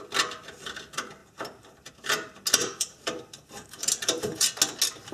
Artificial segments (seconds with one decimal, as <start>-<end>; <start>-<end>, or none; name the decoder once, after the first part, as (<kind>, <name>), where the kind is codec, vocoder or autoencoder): 2.6-4.5 (vocoder, BigVGAN v2)